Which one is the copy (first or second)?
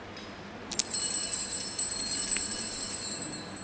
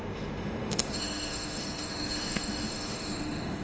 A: second